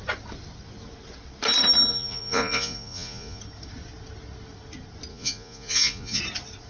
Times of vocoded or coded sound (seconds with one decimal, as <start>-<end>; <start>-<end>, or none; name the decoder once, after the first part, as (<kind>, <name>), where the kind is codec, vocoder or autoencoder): 1.9-3.4 (vocoder, Vocos); 5.1-6.2